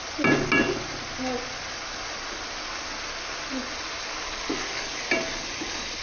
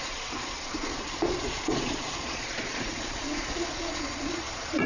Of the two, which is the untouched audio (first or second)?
first